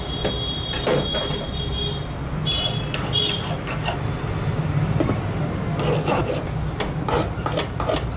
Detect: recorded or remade recorded